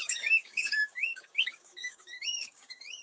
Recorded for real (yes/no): no